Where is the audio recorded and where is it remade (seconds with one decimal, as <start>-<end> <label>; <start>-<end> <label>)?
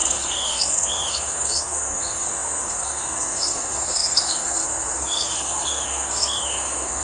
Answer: 0.0-7.0 remade